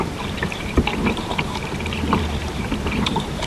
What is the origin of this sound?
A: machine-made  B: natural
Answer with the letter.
A